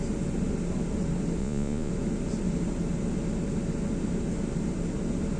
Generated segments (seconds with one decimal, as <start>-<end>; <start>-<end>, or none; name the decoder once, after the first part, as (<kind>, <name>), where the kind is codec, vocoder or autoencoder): 1.4-1.9 (vocoder, Vocos)